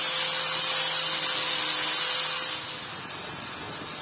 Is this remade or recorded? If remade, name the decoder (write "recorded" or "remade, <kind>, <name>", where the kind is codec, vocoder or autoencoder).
recorded